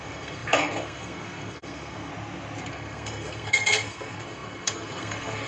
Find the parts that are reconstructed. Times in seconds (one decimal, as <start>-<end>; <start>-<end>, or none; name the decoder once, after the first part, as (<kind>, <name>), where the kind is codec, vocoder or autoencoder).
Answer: 0.0-2.1 (codec, SNAC); 2.7-5.5